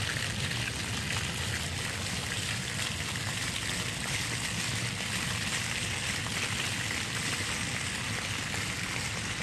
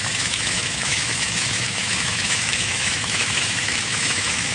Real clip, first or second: first